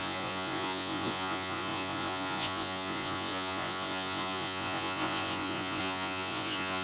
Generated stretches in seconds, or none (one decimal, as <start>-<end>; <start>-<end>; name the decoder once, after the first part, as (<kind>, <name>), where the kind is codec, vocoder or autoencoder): 0.0-6.8 (vocoder, Vocos)